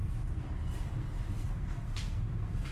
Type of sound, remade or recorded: remade